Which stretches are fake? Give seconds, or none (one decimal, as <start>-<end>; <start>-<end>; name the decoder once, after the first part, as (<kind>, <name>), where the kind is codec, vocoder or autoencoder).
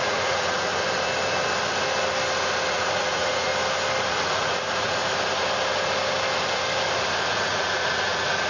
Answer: 0.0-0.7 (vocoder, Vocos); 2.7-3.5; 4.1-5.0; 7.3-8.5